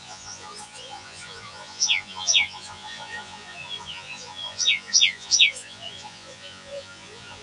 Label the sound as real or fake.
fake